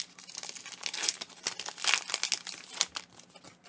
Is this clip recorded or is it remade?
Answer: recorded